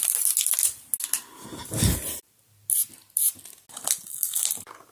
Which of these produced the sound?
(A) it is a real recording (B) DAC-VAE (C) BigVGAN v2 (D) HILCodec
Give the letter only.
A